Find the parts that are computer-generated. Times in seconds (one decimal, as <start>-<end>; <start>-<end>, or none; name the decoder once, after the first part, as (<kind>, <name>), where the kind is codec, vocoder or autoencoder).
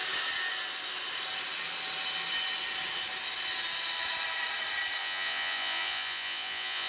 5.0-6.9 (vocoder, Vocos)